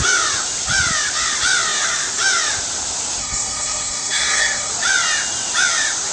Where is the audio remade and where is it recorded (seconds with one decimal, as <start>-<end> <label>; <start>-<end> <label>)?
0.0-3.2 recorded; 3.2-4.7 remade; 4.7-6.1 recorded